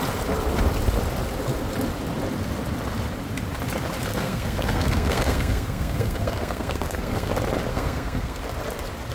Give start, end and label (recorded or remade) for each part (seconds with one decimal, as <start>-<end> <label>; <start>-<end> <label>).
0.0-4.1 recorded; 4.1-7.3 remade; 7.3-7.7 recorded; 7.7-8.4 remade; 8.4-9.1 recorded